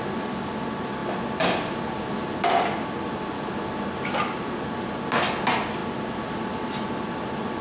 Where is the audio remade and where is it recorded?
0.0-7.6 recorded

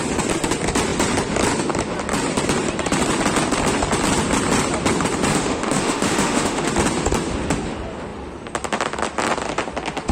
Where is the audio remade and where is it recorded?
0.0-5.3 recorded; 5.3-6.7 remade; 6.7-10.1 recorded

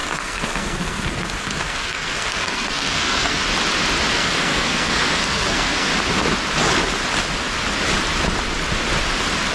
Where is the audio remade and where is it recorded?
0.0-3.4 remade; 3.4-4.1 recorded; 4.1-5.9 remade; 5.9-9.5 recorded

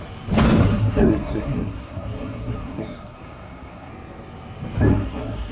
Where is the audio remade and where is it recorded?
0.0-0.6 recorded; 0.6-3.9 remade; 3.9-4.9 recorded; 4.9-5.5 remade